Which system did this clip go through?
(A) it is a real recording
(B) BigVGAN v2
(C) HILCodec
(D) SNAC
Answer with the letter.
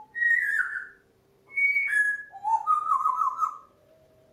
B